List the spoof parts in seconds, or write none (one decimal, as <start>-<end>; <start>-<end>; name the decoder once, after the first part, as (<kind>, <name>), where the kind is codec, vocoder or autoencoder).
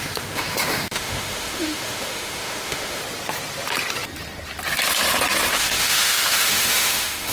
0.0-3.0 (autoencoder, DAC-VAE); 5.5-7.3